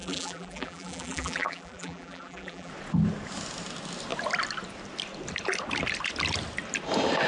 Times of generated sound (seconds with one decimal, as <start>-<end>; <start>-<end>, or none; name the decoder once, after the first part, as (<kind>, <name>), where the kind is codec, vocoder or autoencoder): 0.0-2.7 (vocoder, BigVGAN v2)